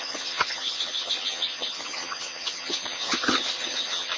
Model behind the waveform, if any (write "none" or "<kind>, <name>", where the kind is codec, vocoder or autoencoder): vocoder, HiFi-GAN